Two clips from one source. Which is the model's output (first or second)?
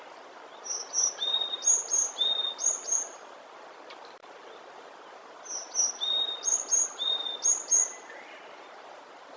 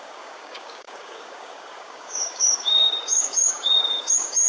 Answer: second